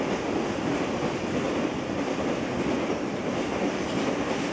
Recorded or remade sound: recorded